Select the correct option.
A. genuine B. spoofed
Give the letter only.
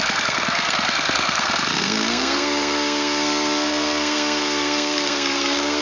B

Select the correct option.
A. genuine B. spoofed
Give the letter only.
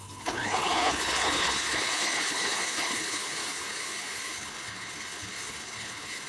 B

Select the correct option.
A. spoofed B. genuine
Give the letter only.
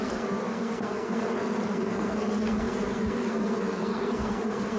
A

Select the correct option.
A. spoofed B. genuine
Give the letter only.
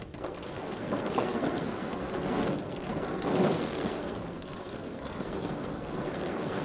A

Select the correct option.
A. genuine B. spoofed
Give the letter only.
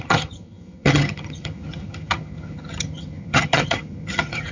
B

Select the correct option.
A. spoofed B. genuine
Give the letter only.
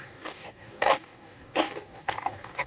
A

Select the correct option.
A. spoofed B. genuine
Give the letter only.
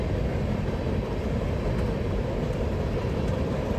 B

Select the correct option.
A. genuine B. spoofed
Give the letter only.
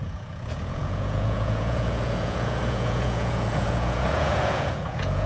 B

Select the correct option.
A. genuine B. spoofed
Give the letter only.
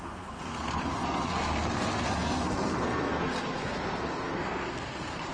B